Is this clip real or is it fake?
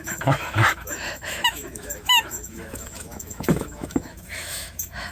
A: fake